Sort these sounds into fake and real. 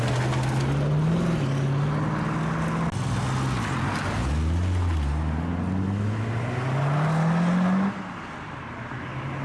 real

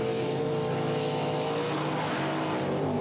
real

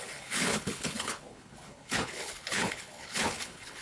fake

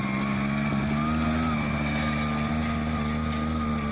real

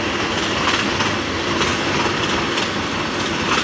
real